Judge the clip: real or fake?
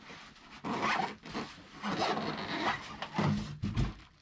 real